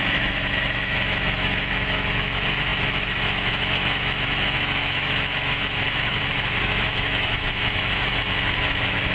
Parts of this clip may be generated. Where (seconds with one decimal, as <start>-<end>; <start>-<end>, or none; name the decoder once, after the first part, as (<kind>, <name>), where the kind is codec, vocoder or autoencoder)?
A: 0.0-9.1 (autoencoder, DAC-VAE)

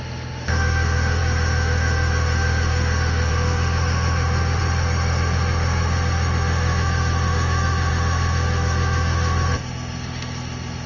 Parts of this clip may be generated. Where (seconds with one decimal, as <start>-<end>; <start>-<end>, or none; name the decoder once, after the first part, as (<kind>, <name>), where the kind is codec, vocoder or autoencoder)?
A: 0.0-10.9 (autoencoder, DAC-VAE)

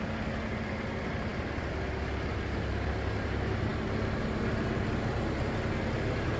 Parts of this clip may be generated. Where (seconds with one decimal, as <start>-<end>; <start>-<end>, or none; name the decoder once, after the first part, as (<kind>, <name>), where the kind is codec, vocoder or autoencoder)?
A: none

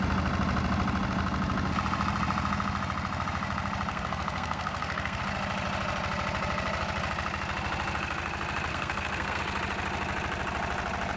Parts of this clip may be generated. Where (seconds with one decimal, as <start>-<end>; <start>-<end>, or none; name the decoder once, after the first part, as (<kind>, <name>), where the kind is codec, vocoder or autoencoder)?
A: 3.9-5.2 (codec, SNAC); 8.7-9.4

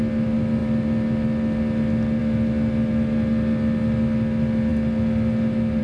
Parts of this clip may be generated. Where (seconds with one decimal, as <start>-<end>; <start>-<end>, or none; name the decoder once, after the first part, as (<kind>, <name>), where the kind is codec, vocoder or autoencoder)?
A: none

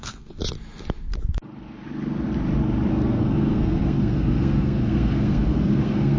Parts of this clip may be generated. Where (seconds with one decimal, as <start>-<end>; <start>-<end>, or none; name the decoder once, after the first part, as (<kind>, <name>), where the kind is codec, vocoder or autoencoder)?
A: 0.0-0.4 (codec, SNAC); 2.9-6.2

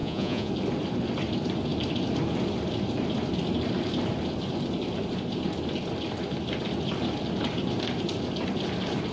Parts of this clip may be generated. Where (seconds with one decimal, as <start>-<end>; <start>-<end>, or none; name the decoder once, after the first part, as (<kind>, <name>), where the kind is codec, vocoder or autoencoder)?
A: 0.0-0.5 (vocoder, Vocos)